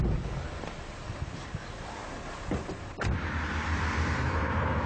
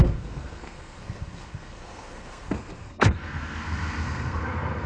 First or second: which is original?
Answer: first